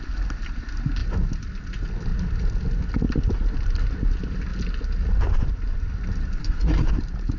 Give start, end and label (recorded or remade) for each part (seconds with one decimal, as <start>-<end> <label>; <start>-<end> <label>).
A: 0.0-6.4 recorded; 6.4-6.9 remade; 6.9-7.4 recorded